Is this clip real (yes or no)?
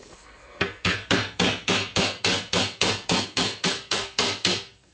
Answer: no